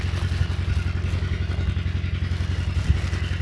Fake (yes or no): no